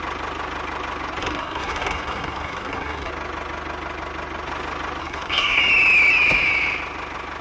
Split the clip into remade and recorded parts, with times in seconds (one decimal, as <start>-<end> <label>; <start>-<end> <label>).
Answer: 0.0-1.2 recorded; 1.2-3.1 remade; 3.1-5.0 recorded; 5.0-5.6 remade; 5.6-7.4 recorded